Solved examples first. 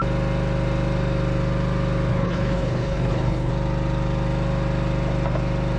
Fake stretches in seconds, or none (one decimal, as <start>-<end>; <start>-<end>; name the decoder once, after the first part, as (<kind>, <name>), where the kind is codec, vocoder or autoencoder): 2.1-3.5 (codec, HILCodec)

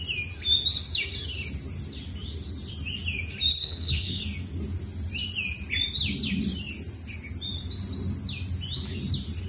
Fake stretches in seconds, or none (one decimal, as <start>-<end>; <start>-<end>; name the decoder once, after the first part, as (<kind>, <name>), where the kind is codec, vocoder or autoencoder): 3.5-4.2 (codec, HILCodec)

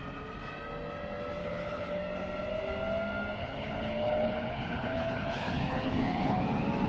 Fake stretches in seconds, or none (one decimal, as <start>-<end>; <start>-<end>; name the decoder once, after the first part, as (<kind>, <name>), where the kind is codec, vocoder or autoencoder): 1.4-2.0 (codec, HILCodec); 3.4-6.4